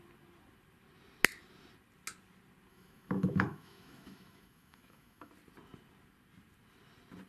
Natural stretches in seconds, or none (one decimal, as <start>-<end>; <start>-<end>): 0.0-2.7; 5.3-7.3